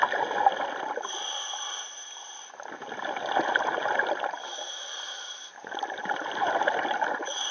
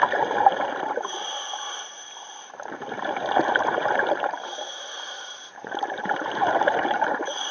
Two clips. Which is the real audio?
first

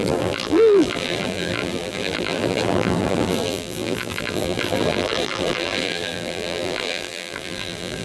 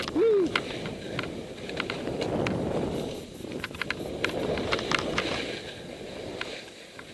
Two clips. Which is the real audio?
second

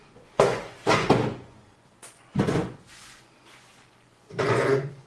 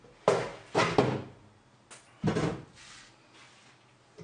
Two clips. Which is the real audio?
second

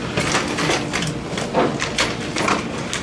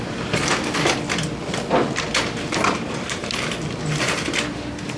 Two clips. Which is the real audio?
first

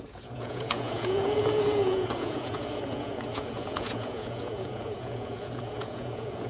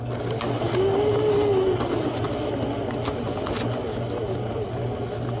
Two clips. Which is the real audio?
second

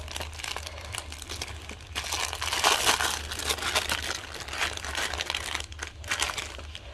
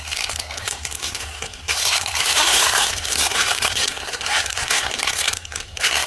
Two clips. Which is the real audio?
first